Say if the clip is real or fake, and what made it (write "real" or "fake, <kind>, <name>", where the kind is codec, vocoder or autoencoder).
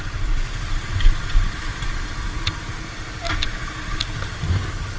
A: real